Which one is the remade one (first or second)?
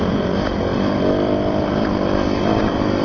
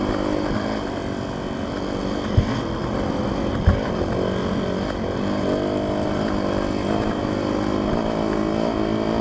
first